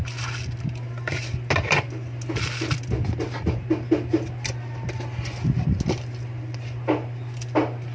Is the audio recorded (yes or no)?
yes